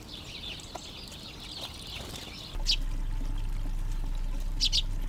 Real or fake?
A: real